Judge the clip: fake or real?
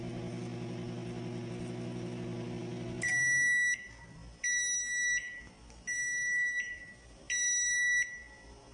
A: real